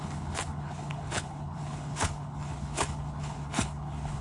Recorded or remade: remade